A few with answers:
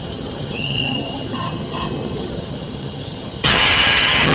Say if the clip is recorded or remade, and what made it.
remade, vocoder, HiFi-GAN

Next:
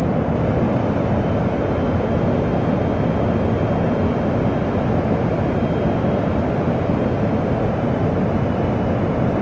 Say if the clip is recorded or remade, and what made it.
recorded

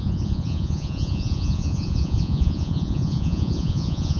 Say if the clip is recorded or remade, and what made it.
remade, vocoder, Vocos